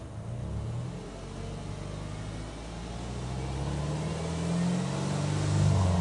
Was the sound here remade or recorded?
recorded